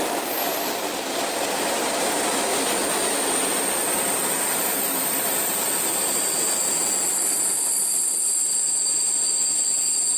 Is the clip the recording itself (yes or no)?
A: yes